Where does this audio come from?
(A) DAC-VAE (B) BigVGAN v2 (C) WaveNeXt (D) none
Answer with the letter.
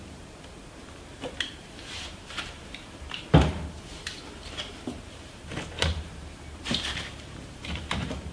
B